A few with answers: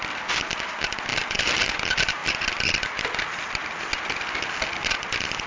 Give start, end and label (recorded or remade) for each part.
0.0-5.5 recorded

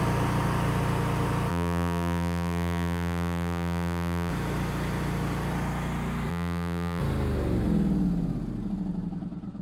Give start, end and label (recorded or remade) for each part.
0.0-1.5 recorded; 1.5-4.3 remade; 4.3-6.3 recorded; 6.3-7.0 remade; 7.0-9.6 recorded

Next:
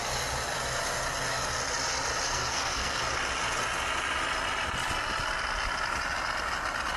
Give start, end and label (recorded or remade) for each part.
0.0-2.3 recorded; 2.3-3.0 remade; 3.0-7.0 recorded

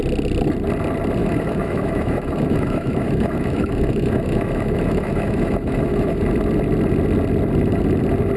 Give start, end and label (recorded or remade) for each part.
0.0-1.2 recorded; 1.2-6.2 remade; 6.2-8.4 recorded

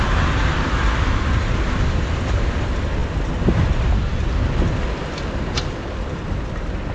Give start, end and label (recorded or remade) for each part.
0.0-6.9 recorded

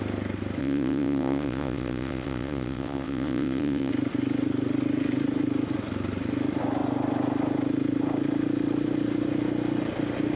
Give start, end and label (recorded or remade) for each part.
0.0-0.6 recorded; 0.6-3.9 remade; 3.9-10.3 recorded